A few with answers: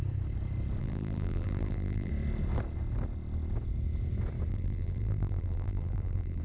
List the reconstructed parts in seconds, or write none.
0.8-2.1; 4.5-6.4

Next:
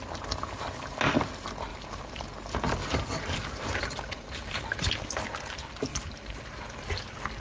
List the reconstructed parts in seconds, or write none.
1.7-4.9; 5.9-6.6

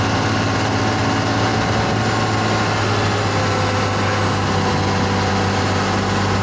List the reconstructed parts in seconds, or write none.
none

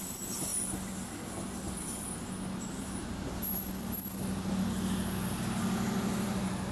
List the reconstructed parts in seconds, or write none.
none